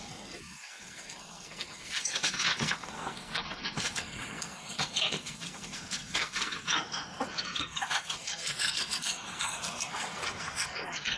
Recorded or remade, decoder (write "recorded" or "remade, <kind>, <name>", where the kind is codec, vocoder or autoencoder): remade, codec, SNAC